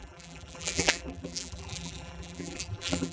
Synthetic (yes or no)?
yes